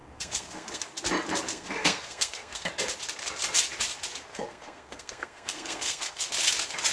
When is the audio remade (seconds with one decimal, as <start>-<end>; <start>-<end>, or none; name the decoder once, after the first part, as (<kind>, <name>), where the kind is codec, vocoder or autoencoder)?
0.0-0.8 (codec, SNAC); 1.5-2.7; 4.3-6.3